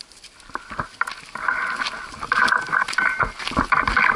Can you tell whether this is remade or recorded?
recorded